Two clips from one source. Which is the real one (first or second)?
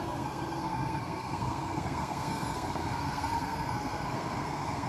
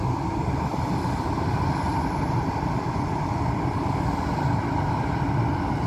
second